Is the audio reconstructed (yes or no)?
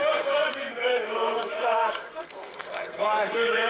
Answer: yes